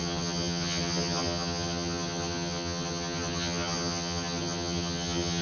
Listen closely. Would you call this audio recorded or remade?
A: remade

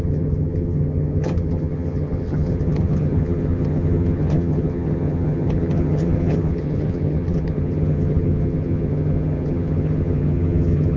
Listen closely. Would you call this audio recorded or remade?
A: remade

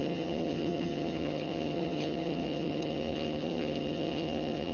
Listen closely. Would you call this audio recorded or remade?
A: remade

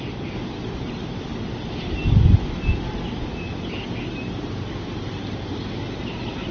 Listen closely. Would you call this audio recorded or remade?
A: recorded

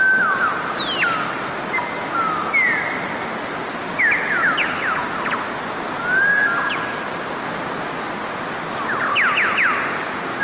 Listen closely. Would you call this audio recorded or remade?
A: recorded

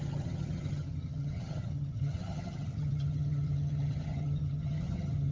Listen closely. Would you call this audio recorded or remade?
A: remade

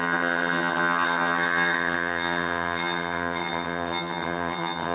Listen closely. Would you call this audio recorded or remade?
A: remade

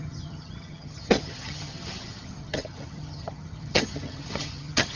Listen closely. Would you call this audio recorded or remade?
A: remade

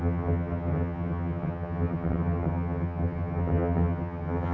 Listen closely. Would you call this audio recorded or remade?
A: remade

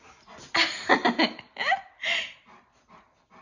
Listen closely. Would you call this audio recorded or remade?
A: recorded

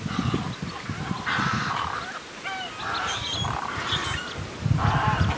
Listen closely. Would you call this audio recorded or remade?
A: recorded